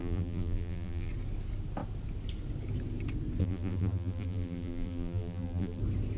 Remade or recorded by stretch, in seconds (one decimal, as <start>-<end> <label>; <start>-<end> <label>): 0.0-1.1 remade; 1.1-3.4 recorded; 3.4-5.8 remade; 5.8-6.2 recorded